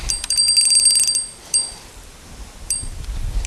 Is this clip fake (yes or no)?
yes